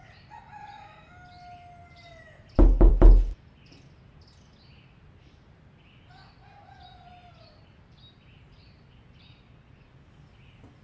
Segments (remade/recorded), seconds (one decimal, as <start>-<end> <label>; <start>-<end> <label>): 0.0-10.8 recorded